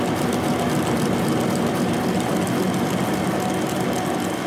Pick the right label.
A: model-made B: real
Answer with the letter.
B